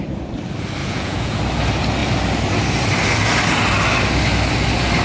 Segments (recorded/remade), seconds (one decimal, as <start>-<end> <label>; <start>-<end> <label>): 0.0-0.8 recorded; 0.8-1.4 remade; 1.4-5.0 recorded